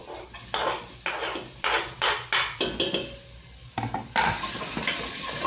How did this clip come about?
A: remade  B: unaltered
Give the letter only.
B